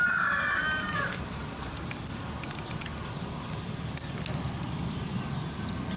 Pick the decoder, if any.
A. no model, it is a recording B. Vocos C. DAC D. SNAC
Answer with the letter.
A